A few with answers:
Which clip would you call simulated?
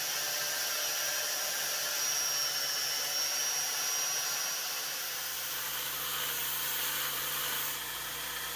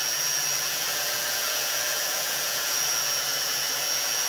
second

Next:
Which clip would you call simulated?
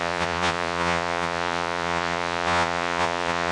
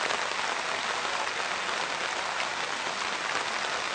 first